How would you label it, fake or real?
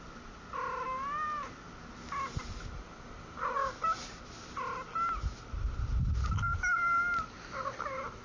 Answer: real